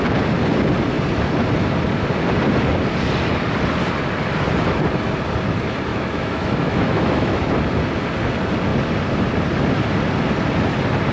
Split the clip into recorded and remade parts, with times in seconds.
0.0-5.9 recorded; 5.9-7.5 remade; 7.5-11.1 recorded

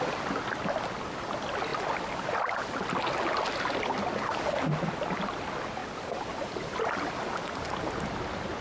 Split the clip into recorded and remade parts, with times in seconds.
0.0-8.6 recorded

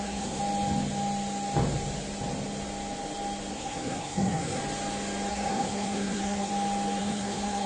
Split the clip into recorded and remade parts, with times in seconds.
0.0-0.4 remade; 0.4-3.5 recorded; 3.5-4.6 remade; 4.6-5.3 recorded; 5.3-6.5 remade; 6.5-7.0 recorded; 7.0-7.7 remade

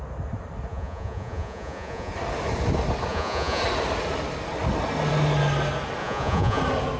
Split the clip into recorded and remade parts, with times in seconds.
0.0-0.7 recorded; 0.7-2.1 remade; 2.1-3.1 recorded; 3.1-3.6 remade; 3.6-6.0 recorded; 6.0-6.6 remade; 6.6-7.0 recorded

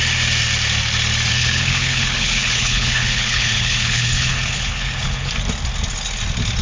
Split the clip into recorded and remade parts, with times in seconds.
0.0-1.3 recorded; 1.3-5.3 remade; 5.3-6.6 recorded

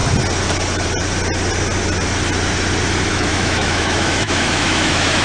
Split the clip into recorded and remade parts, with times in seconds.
0.0-3.1 recorded; 3.1-5.2 remade